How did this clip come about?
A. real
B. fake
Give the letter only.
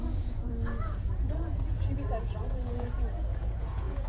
B